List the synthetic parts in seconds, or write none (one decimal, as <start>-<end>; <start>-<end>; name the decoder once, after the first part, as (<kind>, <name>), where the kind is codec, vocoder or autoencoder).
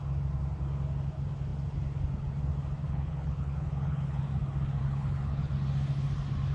2.8-4.2 (codec, HILCodec); 4.8-5.5